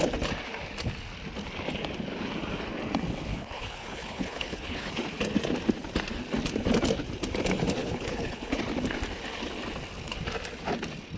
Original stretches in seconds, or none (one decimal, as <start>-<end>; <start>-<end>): 0.0-3.3; 4.9-7.8; 8.6-11.2